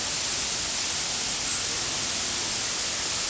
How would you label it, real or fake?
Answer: real